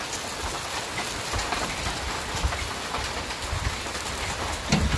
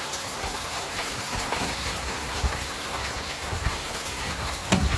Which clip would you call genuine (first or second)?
first